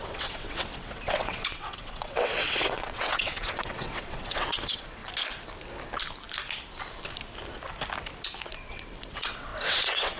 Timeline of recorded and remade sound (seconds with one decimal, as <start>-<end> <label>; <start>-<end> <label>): 0.0-5.0 remade; 5.0-8.7 recorded; 8.7-10.2 remade